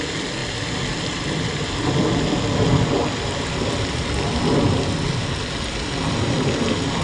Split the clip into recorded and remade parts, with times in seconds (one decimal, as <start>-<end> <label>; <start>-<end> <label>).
0.0-7.0 recorded